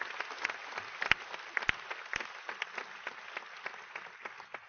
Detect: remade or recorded recorded